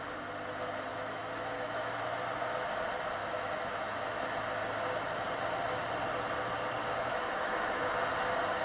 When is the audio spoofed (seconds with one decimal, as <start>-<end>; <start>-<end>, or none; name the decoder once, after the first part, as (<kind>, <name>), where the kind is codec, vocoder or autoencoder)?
0.9-2.0 (autoencoder, DAC-VAE); 3.2-4.2; 6.8-8.0